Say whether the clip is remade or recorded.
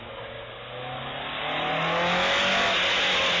recorded